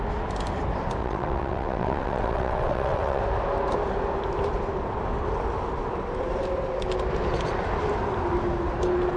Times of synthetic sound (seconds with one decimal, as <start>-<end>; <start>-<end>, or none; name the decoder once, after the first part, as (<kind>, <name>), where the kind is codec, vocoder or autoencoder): 1.0-3.2 (vocoder, WaveNeXt)